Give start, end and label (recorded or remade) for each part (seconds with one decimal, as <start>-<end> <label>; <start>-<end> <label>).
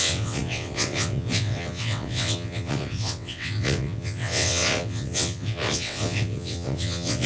0.0-7.3 remade